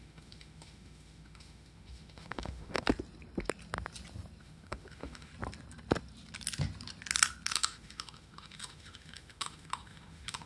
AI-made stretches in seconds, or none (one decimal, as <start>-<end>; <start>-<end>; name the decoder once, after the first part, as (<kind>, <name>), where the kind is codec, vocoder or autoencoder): 0.0-2.9 (autoencoder, DAC-VAE); 4.4-5.3; 7.5-10.5